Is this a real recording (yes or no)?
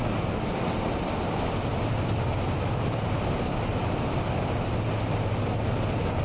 yes